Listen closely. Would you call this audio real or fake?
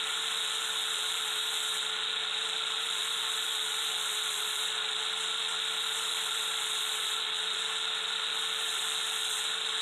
fake